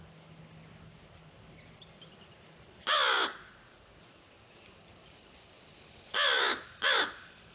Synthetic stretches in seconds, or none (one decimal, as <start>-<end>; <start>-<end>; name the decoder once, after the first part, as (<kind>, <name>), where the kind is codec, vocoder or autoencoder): none